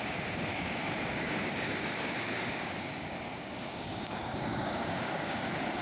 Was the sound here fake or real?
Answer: fake